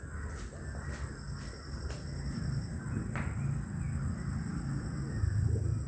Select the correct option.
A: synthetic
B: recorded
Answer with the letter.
B